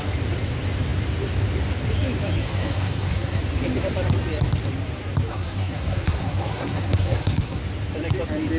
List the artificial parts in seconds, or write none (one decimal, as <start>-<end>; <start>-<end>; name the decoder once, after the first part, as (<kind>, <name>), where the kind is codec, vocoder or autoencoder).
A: 2.4-3.4 (codec, SNAC); 5.3-7.6